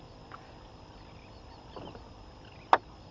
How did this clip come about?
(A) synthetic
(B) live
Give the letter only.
B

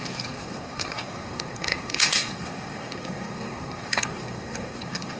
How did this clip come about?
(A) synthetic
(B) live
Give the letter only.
A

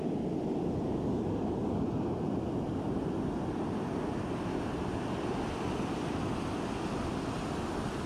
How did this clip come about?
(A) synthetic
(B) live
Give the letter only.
B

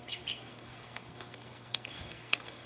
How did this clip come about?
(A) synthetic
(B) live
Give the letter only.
A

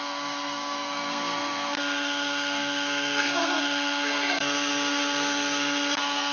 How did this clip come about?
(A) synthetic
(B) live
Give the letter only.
A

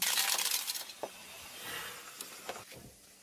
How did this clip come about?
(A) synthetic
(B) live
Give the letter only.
B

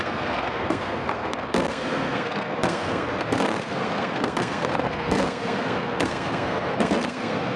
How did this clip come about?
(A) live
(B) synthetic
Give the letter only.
B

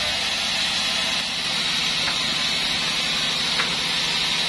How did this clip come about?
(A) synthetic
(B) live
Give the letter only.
B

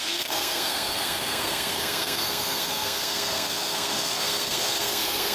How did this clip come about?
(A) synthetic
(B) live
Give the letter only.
A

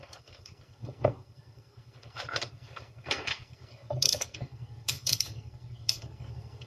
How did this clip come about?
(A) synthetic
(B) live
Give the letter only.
A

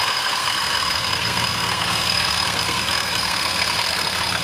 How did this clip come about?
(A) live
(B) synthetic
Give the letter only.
B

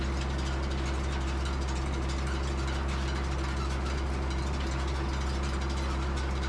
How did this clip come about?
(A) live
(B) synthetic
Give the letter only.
A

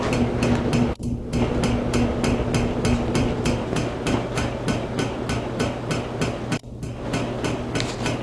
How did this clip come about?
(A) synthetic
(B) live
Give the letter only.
B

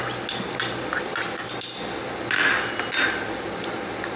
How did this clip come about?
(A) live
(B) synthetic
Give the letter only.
A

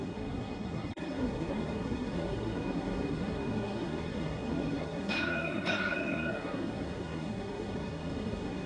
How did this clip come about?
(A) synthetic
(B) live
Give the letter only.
A